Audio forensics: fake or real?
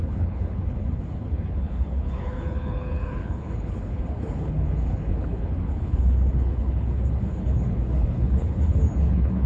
fake